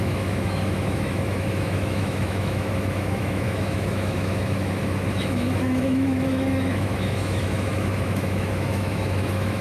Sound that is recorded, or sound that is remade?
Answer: remade